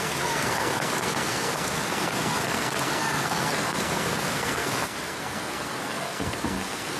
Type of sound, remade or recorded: remade